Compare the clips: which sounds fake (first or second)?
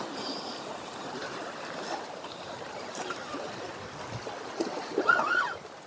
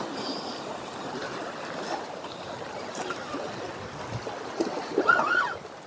first